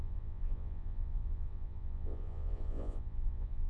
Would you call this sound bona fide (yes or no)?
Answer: no